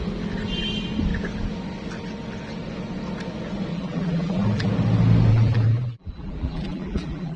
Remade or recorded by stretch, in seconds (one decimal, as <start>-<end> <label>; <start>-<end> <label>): 0.0-3.7 recorded; 3.7-4.7 remade; 4.7-5.3 recorded; 5.3-7.4 remade